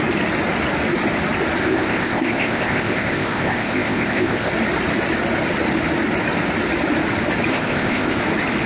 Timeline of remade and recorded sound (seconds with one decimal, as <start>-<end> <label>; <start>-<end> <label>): 0.0-1.6 recorded; 1.6-4.5 remade; 4.5-7.5 recorded; 7.5-8.2 remade; 8.2-8.7 recorded